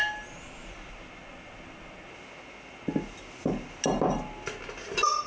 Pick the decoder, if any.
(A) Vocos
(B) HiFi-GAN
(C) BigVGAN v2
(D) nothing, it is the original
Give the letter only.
D